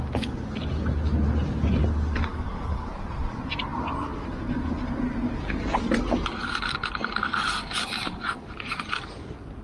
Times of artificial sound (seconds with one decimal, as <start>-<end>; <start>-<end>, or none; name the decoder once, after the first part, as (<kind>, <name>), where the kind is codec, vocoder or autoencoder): 2.3-2.9 (codec, DAC)